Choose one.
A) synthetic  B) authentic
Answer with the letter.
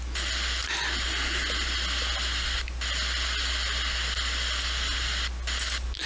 B